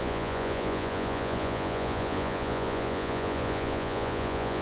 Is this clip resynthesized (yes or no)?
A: yes